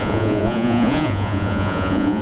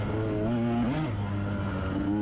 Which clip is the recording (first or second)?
second